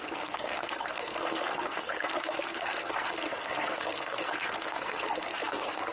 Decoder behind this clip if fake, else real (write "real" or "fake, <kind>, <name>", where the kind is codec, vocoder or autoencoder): fake, codec, SNAC